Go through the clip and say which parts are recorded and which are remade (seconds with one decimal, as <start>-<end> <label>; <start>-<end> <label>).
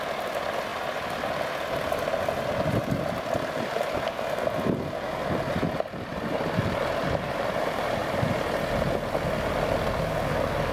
0.0-6.1 recorded; 6.1-7.6 remade; 7.6-10.7 recorded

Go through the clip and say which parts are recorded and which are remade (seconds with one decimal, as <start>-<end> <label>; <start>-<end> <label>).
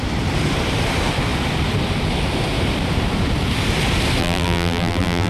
0.0-4.2 recorded; 4.2-5.3 remade